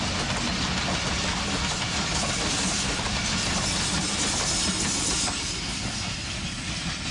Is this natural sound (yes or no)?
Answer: yes